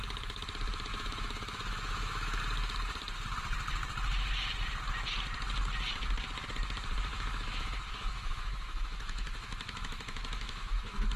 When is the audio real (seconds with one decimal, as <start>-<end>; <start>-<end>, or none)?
0.0-0.9; 2.4-7.1